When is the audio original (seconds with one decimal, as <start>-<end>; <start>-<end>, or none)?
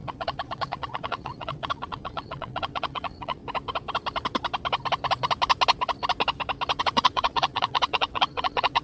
3.4-6.8